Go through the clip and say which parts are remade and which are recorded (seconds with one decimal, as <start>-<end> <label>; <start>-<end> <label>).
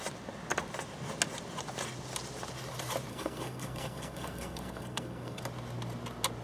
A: 0.0-3.1 recorded; 3.1-5.4 remade; 5.4-6.4 recorded